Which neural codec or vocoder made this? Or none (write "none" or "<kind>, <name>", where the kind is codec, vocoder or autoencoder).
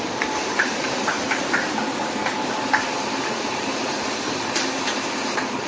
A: vocoder, BigVGAN v2